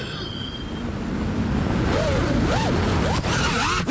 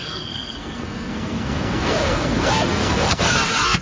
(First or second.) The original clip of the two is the first